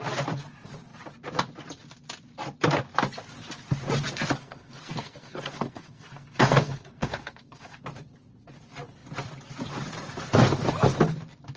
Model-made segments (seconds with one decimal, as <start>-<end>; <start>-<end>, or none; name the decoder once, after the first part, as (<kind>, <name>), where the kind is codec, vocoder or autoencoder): 4.4-7.8 (codec, SNAC)